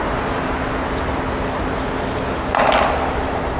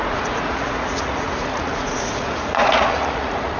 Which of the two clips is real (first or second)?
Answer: first